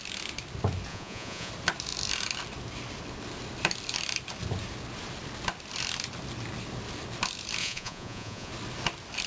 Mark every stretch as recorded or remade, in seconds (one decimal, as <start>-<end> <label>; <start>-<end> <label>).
0.0-0.9 recorded; 0.9-1.5 remade; 1.5-7.6 recorded; 7.6-8.5 remade; 8.5-9.3 recorded